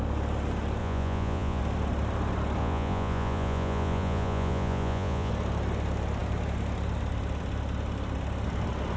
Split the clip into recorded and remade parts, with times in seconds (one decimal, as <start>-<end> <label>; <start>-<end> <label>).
0.0-0.8 recorded; 0.8-1.6 remade; 1.6-2.6 recorded; 2.6-5.3 remade; 5.3-9.0 recorded